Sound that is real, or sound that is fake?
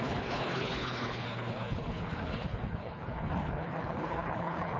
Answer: fake